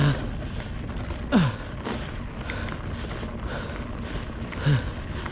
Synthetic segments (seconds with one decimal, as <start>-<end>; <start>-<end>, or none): none